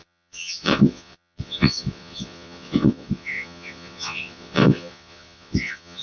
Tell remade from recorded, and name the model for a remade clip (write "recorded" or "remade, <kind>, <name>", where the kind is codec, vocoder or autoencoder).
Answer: remade, vocoder, Vocos